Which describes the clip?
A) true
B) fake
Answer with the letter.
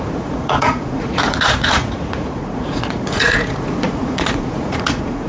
B